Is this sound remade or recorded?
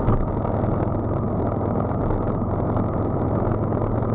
recorded